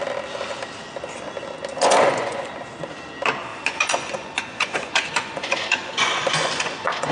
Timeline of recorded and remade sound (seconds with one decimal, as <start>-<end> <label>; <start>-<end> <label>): 0.0-1.7 recorded; 1.7-2.5 remade; 2.5-3.5 recorded; 3.5-7.1 remade